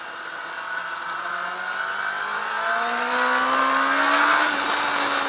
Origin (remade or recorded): recorded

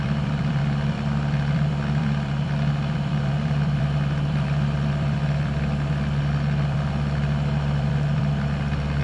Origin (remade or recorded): remade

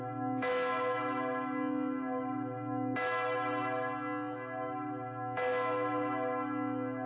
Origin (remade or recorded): recorded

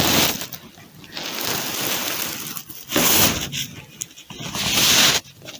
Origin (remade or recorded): recorded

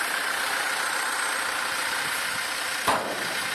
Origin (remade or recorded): remade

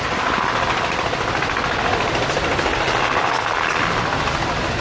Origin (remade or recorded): remade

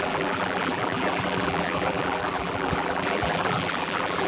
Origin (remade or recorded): remade